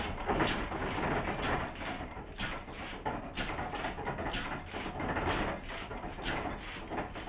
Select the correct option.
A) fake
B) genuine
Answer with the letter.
B